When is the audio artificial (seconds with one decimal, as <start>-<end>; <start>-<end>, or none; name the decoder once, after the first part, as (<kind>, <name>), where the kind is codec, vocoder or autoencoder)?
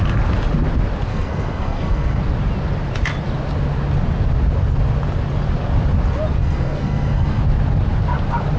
1.1-2.2 (codec, SNAC); 6.4-7.4